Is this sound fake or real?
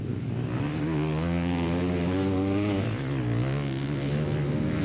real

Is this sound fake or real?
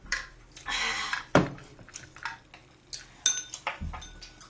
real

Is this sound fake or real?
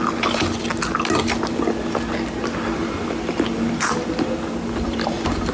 real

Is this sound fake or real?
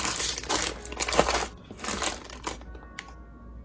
real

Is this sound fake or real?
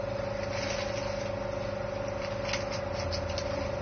real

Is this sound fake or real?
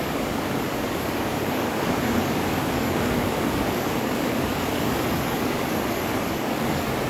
fake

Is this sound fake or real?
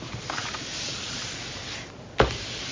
real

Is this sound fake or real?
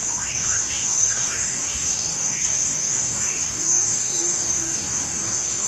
fake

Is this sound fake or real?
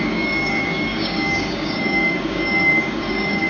fake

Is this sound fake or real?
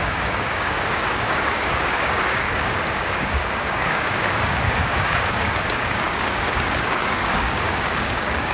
fake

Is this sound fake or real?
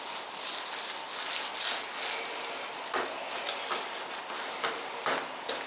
real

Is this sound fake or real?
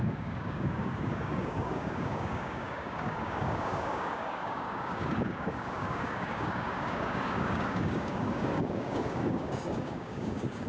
fake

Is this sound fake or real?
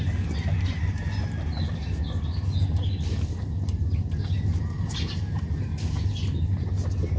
real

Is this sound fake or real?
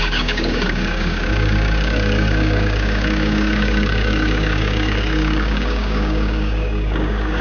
fake